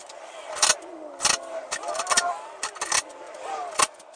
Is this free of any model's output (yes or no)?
yes